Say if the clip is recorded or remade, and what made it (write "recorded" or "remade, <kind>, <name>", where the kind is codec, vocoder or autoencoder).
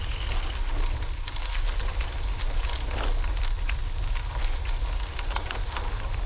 recorded